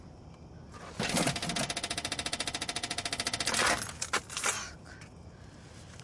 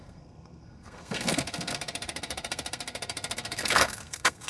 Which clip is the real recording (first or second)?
first